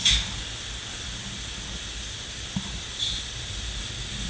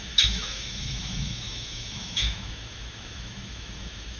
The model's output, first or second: second